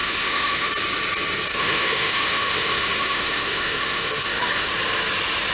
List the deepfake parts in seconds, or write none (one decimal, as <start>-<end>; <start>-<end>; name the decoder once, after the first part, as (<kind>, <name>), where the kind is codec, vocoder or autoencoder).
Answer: 0.0-0.7 (autoencoder, DAC-VAE); 1.5-4.7